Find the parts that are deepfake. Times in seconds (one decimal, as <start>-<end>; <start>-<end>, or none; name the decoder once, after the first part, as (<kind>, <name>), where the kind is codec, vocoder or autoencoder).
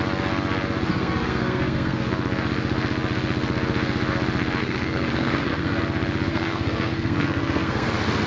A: 0.9-2.1 (codec, SNAC); 4.6-5.8; 6.3-7.9